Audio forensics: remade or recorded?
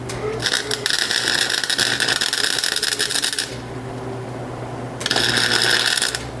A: recorded